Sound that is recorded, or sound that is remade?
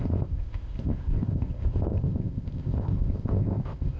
remade